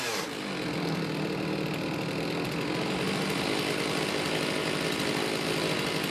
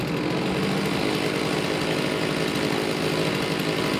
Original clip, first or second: second